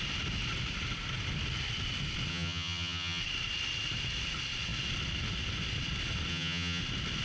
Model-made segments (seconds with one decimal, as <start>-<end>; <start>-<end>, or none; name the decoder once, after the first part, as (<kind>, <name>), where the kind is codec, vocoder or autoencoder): 2.3-3.2 (vocoder, HiFi-GAN); 6.3-6.8